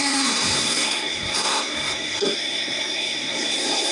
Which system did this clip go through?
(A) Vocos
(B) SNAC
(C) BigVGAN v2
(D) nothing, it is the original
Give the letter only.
B